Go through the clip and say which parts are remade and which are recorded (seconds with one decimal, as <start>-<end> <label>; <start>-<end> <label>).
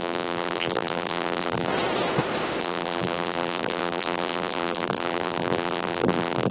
0.0-1.7 remade; 1.7-2.6 recorded; 2.6-6.5 remade